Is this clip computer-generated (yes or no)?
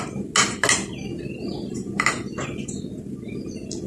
no